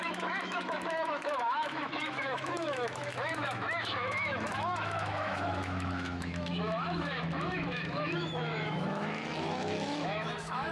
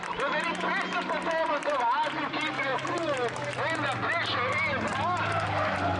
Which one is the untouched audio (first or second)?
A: second